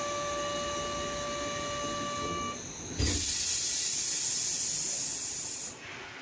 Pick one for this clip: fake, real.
real